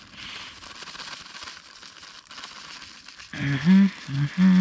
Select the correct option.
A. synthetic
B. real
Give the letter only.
B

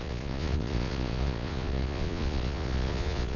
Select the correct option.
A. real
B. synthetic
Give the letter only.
B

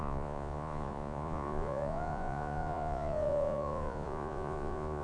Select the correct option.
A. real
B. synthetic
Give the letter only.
B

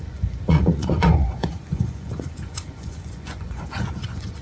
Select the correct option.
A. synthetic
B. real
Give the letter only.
A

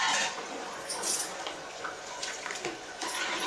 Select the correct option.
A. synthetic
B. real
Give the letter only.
A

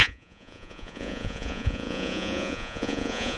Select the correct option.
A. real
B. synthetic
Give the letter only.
B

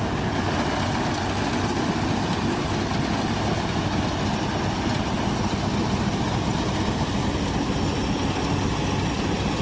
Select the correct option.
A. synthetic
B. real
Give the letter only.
B